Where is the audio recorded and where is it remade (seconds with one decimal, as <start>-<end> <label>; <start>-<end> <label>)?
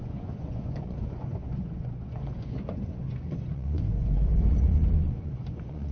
0.0-5.9 remade